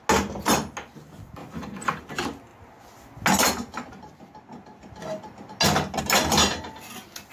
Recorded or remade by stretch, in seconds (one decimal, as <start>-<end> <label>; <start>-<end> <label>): 0.0-1.4 recorded; 1.4-2.0 remade; 2.0-7.3 recorded